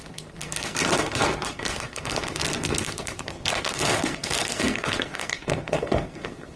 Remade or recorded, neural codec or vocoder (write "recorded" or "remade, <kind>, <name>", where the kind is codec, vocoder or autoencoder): remade, codec, SNAC